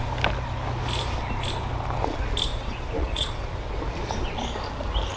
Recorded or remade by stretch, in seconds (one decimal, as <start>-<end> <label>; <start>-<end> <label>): 0.0-2.5 recorded; 2.5-3.4 remade; 3.4-5.2 recorded